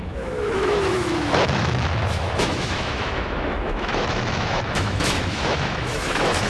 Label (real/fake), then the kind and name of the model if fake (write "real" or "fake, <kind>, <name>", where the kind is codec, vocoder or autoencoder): fake, autoencoder, DAC-VAE